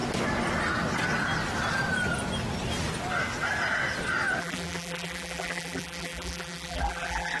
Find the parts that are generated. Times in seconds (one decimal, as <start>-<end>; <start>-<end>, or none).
4.4-7.4